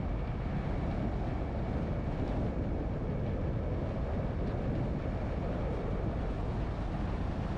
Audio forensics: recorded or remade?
recorded